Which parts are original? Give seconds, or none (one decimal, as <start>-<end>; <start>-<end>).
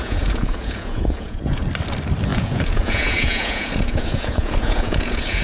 1.6-2.3